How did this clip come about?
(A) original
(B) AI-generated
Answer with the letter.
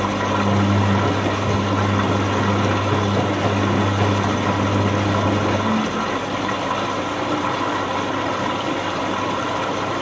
A